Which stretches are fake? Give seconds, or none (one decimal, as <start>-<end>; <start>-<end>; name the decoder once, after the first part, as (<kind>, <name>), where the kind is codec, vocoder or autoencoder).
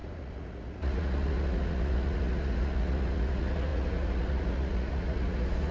0.0-5.7 (vocoder, Vocos)